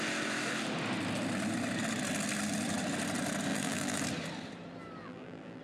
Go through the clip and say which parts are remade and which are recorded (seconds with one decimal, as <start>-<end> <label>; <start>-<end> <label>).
0.0-3.5 recorded; 3.5-4.0 remade; 4.0-5.0 recorded; 5.0-5.6 remade